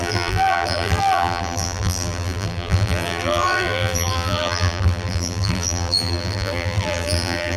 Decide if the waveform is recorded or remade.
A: remade